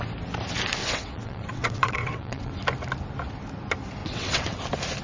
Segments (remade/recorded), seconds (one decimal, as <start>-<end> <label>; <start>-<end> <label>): 0.0-0.8 recorded; 0.8-2.5 remade; 2.5-4.0 recorded; 4.0-4.6 remade; 4.6-5.0 recorded